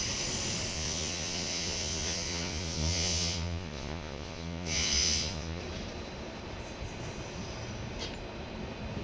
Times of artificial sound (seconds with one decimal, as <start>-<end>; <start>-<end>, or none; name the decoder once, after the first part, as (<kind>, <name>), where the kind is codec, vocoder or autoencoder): 0.7-5.6 (vocoder, Vocos)